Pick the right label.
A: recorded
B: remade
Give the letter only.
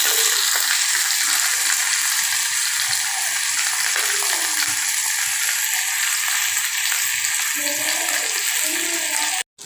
A